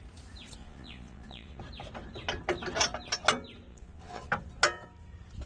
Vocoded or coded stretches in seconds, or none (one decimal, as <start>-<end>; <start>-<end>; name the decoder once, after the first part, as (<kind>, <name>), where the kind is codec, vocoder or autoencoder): 0.6-1.6 (vocoder, Vocos); 3.7-4.3